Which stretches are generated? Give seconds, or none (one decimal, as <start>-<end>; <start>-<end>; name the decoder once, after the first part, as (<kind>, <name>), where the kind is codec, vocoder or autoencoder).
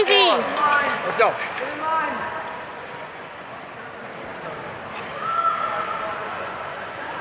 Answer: 0.5-1.6 (vocoder, Vocos); 2.7-3.7; 6.2-7.2